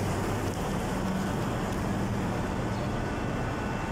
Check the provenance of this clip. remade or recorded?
recorded